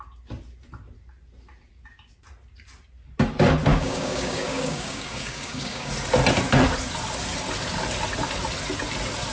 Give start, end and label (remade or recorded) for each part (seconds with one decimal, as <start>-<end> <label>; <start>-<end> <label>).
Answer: 0.0-3.7 recorded; 3.7-5.9 remade; 5.9-9.3 recorded